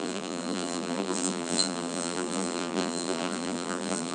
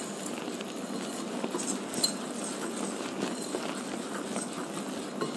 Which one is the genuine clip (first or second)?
second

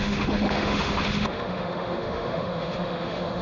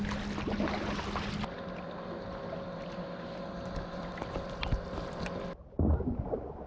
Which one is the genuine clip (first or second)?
second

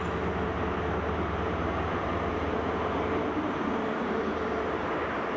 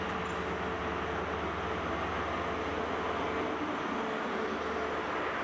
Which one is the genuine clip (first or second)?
second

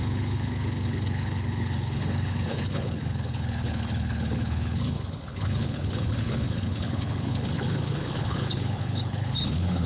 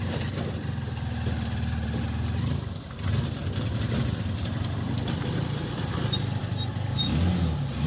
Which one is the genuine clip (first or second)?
second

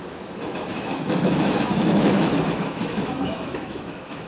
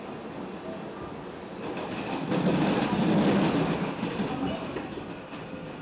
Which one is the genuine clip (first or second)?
second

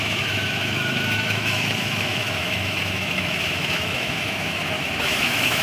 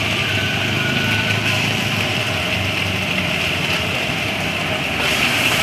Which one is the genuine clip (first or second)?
second